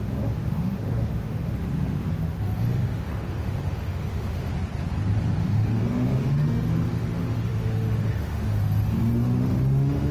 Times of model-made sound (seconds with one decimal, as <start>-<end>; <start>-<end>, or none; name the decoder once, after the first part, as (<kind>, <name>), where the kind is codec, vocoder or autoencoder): 0.0-4.5 (autoencoder, DAC-VAE); 5.4-10.1